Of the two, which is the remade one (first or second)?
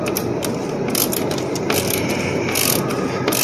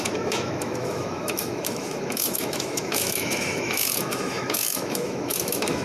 second